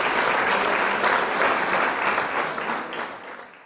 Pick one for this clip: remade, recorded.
recorded